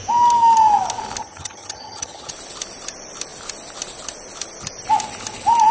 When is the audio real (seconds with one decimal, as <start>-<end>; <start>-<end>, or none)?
0.0-1.2; 2.3-5.7